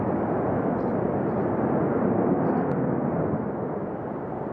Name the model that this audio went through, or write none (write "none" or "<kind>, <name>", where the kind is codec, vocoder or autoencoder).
none